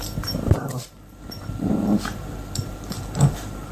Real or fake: fake